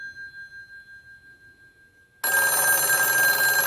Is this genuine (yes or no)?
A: yes